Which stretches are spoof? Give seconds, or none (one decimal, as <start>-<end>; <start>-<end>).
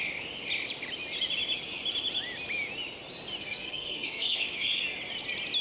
3.4-4.8